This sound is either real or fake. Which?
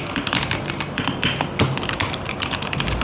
real